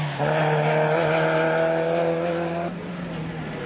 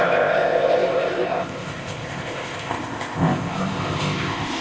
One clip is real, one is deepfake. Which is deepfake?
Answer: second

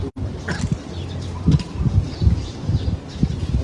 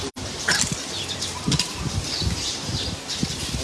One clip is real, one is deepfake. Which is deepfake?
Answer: second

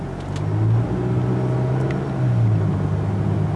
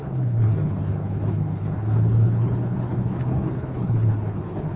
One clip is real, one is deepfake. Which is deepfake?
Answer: second